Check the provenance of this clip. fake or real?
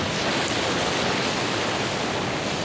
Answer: real